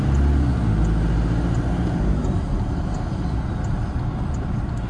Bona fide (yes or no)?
yes